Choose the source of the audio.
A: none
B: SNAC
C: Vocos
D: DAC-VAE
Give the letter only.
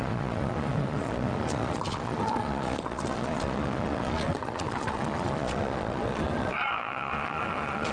C